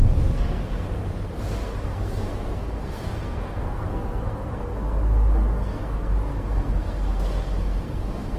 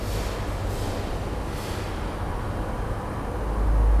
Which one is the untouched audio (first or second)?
second